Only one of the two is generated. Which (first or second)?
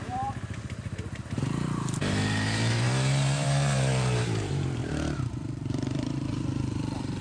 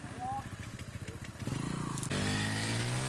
first